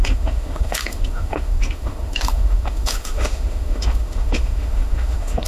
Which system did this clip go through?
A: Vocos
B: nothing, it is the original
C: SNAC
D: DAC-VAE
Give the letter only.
D